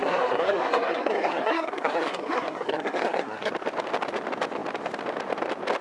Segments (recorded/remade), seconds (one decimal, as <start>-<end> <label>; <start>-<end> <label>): 0.0-3.5 remade; 3.5-5.8 recorded